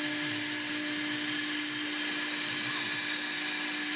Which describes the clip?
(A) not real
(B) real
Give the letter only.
B